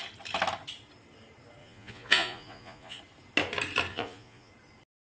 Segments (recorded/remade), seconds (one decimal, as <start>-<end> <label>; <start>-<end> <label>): 0.0-1.6 recorded; 1.6-3.0 remade; 3.0-3.9 recorded; 3.9-4.5 remade; 4.5-5.0 recorded